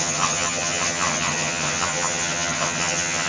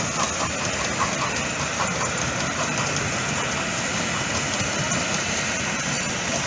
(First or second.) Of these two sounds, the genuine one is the second